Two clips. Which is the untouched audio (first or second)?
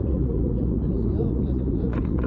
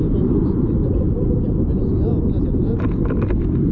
second